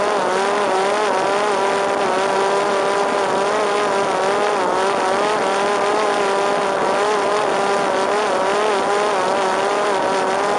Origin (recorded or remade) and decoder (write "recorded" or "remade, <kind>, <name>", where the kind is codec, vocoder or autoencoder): recorded